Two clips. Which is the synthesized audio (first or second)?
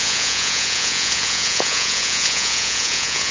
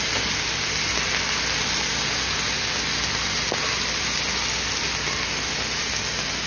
first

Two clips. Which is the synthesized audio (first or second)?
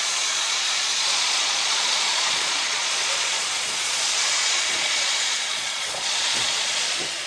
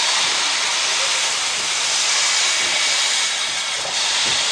first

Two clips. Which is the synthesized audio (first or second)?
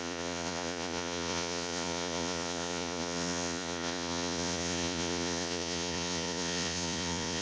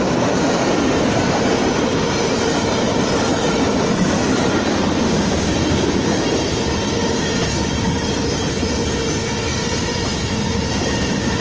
first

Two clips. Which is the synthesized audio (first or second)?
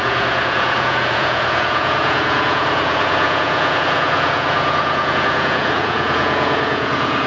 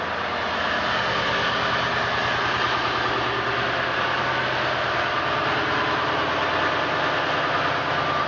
first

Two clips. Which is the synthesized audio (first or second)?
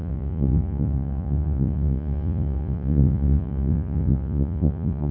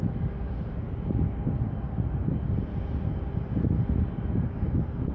first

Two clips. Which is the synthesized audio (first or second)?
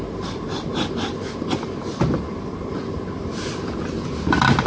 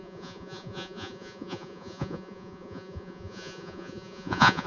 second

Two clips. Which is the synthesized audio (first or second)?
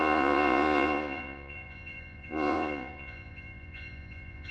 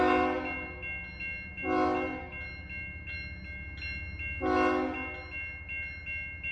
first